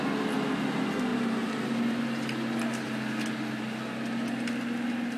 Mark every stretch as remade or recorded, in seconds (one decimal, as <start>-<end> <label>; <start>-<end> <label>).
0.0-1.1 recorded; 1.1-2.0 remade; 2.0-5.2 recorded